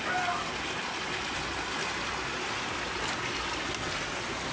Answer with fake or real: real